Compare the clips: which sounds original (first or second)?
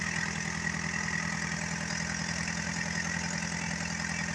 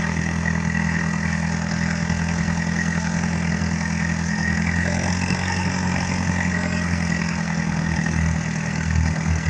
first